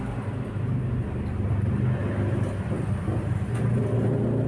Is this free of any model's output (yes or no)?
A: yes